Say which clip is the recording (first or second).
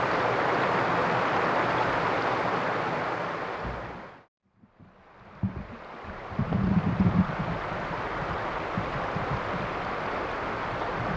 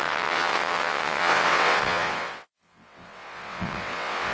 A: first